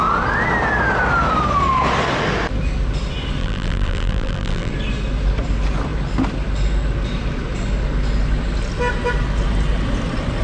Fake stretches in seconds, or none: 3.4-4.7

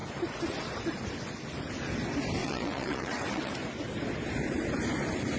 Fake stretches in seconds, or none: 2.4-3.5

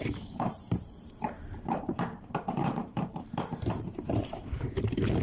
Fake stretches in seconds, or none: 0.0-5.2

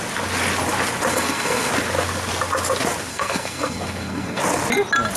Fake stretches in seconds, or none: 1.1-1.7; 3.1-4.4

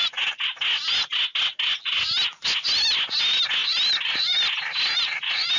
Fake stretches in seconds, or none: none

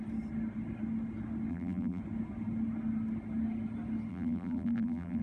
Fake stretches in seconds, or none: 1.5-2.0; 4.1-5.2